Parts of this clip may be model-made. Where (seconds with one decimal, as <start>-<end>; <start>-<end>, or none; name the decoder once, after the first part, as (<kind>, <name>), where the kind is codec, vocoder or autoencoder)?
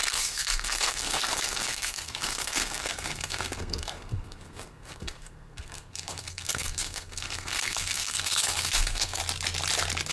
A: 0.0-9.2 (codec, SNAC)